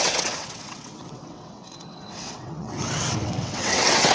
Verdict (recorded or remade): remade